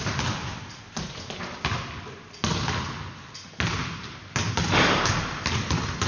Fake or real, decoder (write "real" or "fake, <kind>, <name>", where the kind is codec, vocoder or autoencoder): real